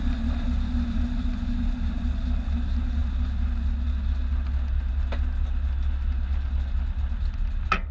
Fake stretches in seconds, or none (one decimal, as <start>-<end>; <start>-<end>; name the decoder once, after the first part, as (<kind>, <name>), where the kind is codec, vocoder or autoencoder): none